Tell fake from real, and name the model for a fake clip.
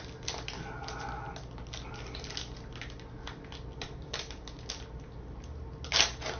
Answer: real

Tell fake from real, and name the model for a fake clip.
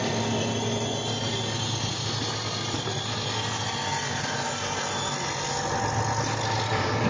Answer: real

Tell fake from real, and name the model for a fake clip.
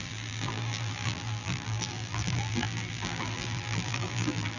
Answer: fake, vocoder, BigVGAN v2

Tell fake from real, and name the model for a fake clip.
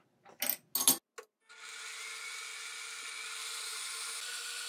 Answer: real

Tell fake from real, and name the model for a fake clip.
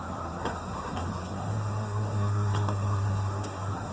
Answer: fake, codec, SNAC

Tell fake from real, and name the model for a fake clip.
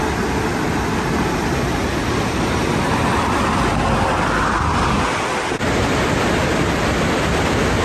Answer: real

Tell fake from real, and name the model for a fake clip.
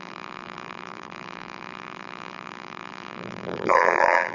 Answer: fake, vocoder, BigVGAN v2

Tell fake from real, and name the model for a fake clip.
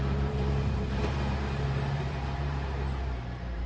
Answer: fake, vocoder, BigVGAN v2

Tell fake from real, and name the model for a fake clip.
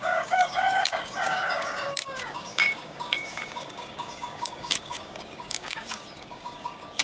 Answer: fake, codec, DAC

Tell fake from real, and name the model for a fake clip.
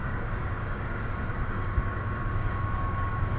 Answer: fake, codec, DAC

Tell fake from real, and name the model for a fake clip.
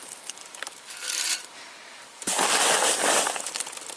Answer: real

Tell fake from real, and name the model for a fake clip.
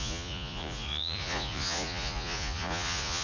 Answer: fake, vocoder, Vocos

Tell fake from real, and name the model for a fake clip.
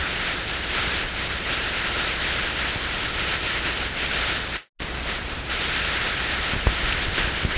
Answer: real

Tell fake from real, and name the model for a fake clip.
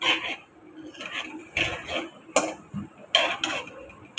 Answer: real